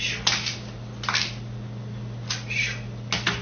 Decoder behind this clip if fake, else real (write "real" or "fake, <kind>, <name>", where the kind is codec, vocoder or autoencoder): real